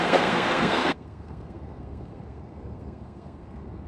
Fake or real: fake